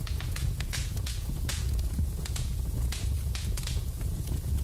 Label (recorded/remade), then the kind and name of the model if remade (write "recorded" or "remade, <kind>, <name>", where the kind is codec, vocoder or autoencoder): remade, vocoder, Vocos